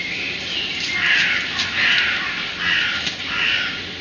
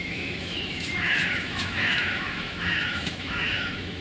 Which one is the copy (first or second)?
second